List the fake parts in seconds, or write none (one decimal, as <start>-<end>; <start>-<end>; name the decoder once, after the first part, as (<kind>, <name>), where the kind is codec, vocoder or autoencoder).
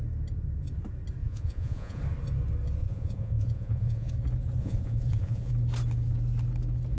1.2-2.0 (vocoder, Vocos); 2.8-4.1; 4.6-5.5